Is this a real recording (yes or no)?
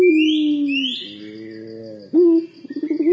yes